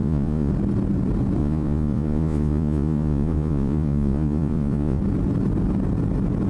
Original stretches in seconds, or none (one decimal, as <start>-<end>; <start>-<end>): 0.5-1.4; 5.0-6.5